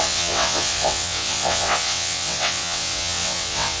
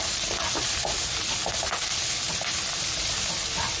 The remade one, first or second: first